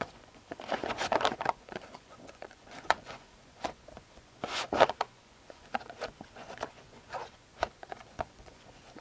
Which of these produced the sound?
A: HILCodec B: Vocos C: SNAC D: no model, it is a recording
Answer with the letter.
B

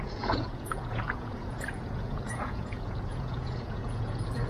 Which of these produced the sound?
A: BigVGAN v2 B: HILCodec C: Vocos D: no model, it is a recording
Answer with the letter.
C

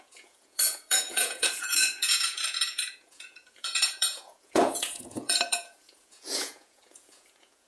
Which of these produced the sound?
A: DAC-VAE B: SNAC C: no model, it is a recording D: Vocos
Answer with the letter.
D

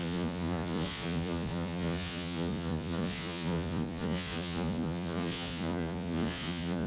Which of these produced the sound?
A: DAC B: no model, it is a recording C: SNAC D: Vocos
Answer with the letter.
D